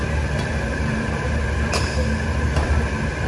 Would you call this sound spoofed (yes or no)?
yes